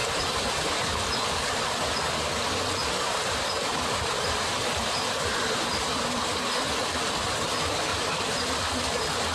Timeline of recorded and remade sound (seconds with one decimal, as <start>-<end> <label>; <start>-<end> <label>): 0.0-1.1 remade; 1.1-2.8 recorded; 2.8-5.6 remade; 5.6-7.9 recorded; 7.9-8.6 remade; 8.6-9.3 recorded